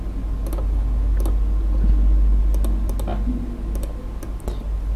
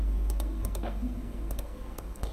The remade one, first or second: second